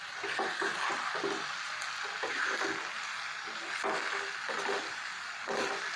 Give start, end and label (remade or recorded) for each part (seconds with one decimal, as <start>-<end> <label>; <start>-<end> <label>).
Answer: 0.0-6.0 recorded